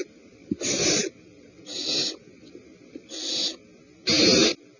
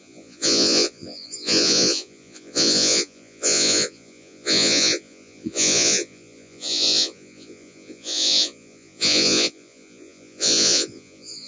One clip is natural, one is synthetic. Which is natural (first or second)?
first